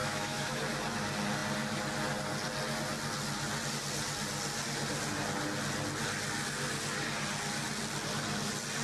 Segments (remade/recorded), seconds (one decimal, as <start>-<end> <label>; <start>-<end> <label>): 0.0-0.6 remade; 0.6-8.8 recorded